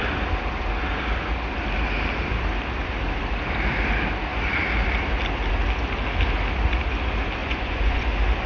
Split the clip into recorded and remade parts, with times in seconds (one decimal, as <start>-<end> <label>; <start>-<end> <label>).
0.0-7.4 recorded; 7.4-8.1 remade; 8.1-8.5 recorded